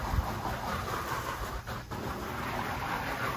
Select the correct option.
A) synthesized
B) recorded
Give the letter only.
B